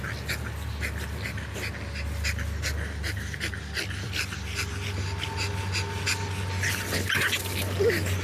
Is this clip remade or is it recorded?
recorded